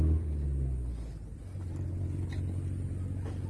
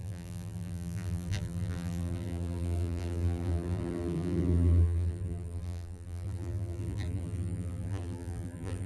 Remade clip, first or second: second